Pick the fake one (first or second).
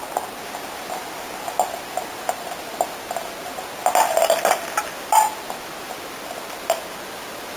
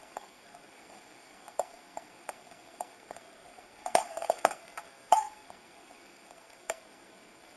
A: second